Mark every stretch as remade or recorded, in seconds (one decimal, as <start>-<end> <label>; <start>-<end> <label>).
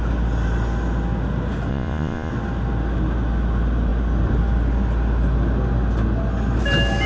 0.0-1.7 recorded; 1.7-2.3 remade; 2.3-7.1 recorded